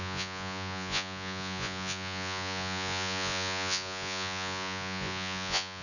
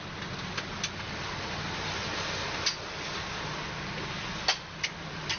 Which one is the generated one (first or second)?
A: first